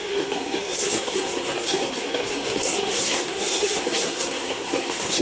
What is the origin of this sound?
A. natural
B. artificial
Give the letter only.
B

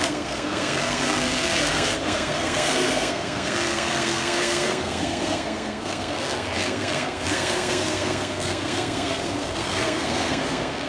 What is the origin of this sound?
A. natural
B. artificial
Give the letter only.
B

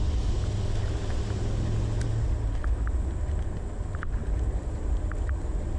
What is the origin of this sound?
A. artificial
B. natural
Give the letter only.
B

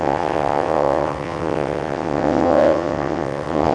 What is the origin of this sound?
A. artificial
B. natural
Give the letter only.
A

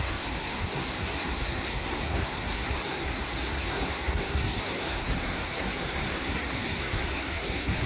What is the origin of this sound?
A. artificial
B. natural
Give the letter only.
A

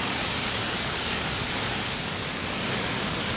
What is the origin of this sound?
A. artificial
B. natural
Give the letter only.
A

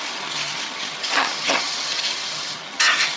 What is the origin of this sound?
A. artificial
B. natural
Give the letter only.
A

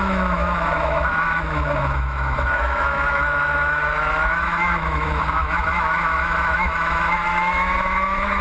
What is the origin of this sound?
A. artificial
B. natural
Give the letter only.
A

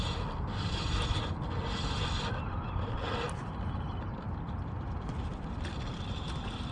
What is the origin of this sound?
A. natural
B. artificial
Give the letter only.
A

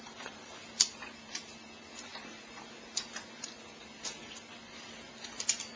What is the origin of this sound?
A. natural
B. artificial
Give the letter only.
B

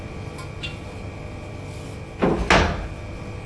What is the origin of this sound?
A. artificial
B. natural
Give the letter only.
B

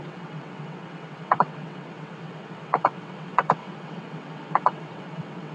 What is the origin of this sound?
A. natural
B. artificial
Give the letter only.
B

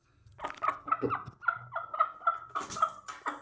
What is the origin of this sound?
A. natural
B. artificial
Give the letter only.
A